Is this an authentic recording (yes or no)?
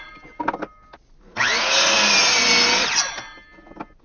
yes